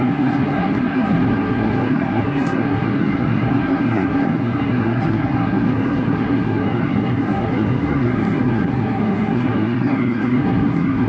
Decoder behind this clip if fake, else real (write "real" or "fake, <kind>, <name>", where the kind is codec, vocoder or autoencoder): fake, codec, SNAC